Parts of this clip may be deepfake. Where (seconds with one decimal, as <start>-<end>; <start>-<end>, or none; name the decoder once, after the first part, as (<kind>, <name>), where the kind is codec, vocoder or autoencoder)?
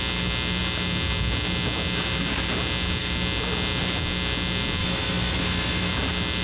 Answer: 4.8-5.9 (autoencoder, DAC-VAE)